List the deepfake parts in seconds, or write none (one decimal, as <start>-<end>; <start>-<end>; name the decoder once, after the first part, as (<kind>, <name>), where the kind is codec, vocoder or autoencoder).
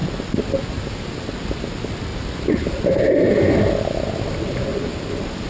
none